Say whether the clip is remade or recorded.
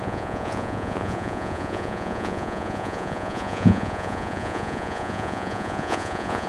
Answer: remade